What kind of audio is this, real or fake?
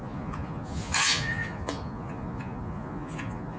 fake